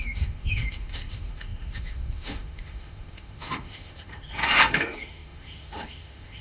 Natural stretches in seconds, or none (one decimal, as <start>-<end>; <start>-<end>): none